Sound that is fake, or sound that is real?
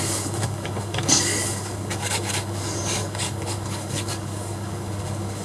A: fake